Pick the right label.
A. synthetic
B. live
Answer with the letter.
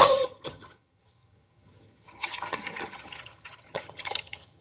A